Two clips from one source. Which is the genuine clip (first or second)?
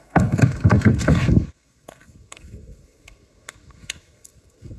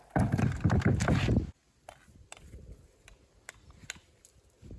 second